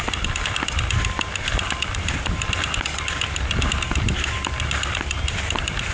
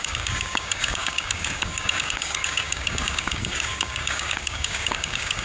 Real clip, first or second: first